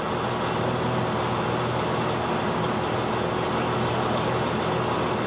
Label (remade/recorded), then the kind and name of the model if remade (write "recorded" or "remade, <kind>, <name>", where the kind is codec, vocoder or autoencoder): recorded